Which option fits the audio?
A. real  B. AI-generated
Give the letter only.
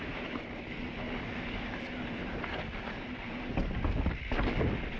A